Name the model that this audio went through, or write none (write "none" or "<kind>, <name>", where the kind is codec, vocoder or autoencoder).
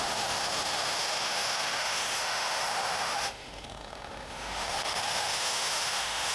autoencoder, DAC-VAE